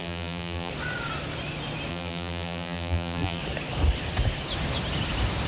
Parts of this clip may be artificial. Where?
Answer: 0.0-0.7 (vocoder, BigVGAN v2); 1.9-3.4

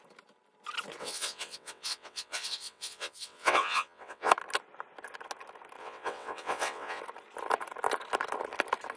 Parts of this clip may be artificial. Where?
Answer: 1.0-4.3 (vocoder, WaveNeXt); 5.8-7.0